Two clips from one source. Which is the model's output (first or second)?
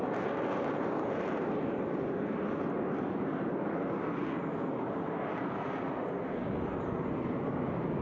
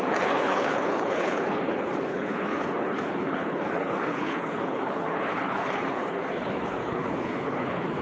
second